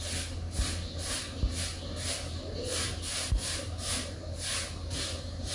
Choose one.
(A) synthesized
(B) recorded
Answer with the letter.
B